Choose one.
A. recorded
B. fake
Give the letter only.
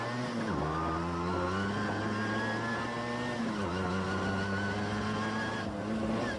A